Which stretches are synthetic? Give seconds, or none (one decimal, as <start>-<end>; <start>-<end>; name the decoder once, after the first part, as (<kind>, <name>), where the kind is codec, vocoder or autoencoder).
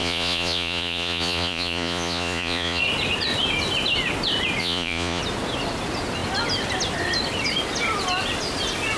0.0-2.8 (vocoder, Vocos); 4.6-5.2